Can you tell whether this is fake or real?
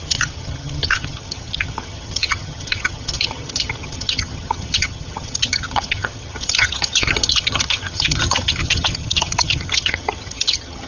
fake